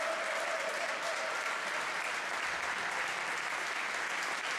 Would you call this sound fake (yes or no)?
no